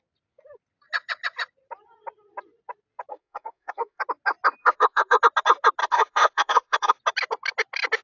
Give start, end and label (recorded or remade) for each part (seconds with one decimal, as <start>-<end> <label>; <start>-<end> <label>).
0.0-3.1 recorded; 3.1-4.0 remade; 4.0-4.6 recorded; 4.6-5.2 remade; 5.2-5.8 recorded; 5.8-6.9 remade; 6.9-8.0 recorded